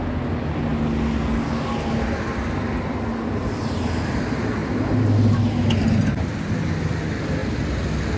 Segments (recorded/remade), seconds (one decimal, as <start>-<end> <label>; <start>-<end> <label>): 0.0-8.2 recorded